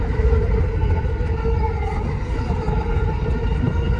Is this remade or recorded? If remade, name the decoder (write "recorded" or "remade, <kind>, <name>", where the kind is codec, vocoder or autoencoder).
recorded